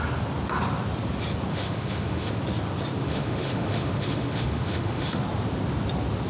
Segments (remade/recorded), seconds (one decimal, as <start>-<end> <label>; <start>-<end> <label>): 0.0-1.5 recorded; 1.5-2.3 remade; 2.3-3.0 recorded; 3.0-5.2 remade; 5.2-6.3 recorded